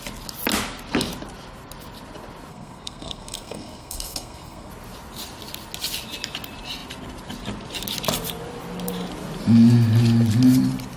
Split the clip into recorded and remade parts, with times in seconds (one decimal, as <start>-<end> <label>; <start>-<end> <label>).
0.0-2.5 recorded; 2.5-4.7 remade; 4.7-11.0 recorded